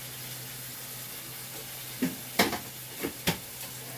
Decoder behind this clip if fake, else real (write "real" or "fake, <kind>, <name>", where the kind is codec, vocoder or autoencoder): real